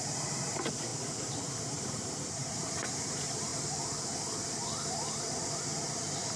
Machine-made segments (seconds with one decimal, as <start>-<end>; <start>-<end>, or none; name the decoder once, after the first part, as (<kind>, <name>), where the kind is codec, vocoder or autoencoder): 0.0-0.9 (vocoder, BigVGAN v2); 1.6-3.5